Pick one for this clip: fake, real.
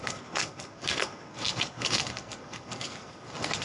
fake